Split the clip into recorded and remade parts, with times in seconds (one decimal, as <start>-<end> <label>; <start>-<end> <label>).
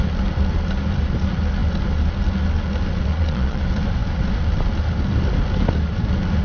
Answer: 0.0-3.1 recorded; 3.1-3.6 remade; 3.6-6.4 recorded